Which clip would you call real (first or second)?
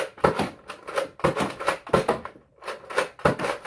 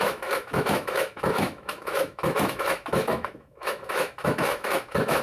first